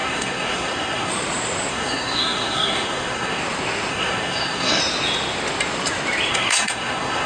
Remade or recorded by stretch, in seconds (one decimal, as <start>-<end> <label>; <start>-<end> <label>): 0.0-1.1 remade; 1.1-1.7 recorded; 1.7-3.4 remade; 3.4-3.9 recorded; 3.9-4.8 remade; 4.8-6.3 recorded; 6.3-7.3 remade